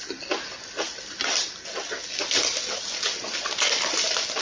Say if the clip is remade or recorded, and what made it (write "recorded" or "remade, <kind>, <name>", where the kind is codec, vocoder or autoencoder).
recorded